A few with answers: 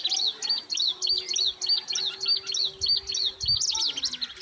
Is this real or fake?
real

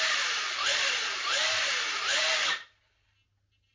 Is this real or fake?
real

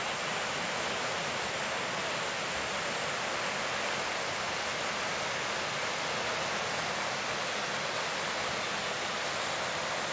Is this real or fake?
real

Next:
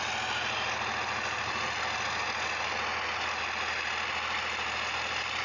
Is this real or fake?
real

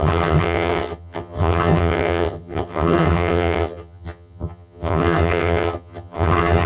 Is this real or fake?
fake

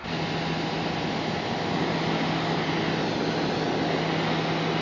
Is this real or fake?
real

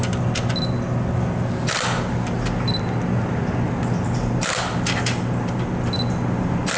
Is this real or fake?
real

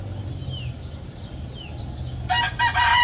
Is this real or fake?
real